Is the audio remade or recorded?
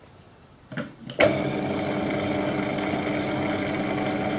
recorded